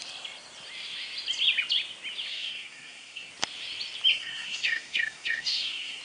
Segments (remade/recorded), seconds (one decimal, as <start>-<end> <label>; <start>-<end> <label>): 0.0-2.3 recorded; 2.3-3.3 remade; 3.3-4.1 recorded; 4.1-6.0 remade